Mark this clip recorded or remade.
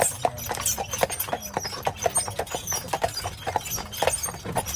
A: recorded